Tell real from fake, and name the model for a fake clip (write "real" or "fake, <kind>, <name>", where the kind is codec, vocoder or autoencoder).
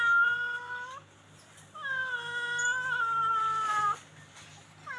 real